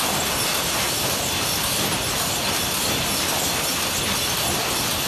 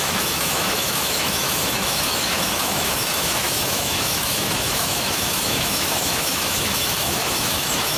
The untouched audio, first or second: first